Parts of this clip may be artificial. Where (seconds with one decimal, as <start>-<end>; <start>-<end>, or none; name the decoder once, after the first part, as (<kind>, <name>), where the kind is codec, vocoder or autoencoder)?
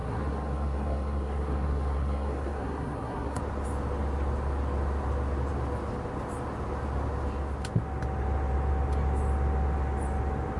0.0-3.4 (codec, SNAC)